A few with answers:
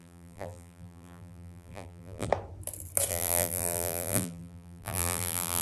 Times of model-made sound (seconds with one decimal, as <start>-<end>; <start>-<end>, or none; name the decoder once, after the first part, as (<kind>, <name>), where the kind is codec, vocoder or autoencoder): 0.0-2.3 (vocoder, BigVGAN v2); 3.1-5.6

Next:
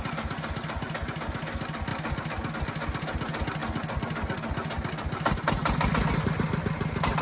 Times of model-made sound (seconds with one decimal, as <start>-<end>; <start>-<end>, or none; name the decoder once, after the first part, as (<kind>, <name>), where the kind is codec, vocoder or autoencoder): none

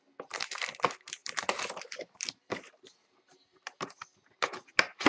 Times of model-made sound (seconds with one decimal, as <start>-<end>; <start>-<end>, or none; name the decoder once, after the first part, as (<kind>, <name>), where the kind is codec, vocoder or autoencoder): 1.2-4.3 (vocoder, BigVGAN v2)

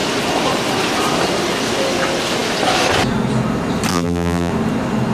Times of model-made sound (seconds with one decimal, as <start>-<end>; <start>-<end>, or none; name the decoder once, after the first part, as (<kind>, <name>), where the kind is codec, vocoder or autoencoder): 3.9-4.5 (vocoder, BigVGAN v2)

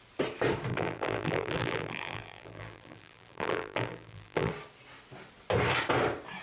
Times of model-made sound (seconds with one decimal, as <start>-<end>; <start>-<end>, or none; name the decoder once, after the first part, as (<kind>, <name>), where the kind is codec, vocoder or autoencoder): 0.7-4.5 (vocoder, BigVGAN v2)

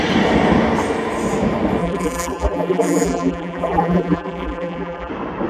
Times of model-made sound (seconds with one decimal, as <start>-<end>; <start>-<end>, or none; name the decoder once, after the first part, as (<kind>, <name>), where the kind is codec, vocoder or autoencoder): 1.8-5.1 (vocoder, BigVGAN v2)

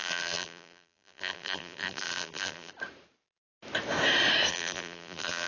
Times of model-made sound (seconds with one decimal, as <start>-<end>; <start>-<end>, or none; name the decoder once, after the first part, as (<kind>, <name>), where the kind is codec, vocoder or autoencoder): 0.0-2.7 (vocoder, BigVGAN v2); 4.5-5.5